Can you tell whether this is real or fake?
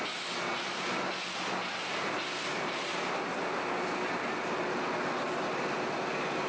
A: real